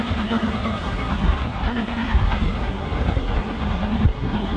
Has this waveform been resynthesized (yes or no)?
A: yes